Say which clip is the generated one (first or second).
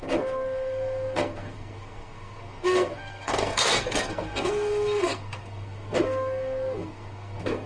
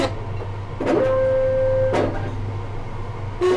first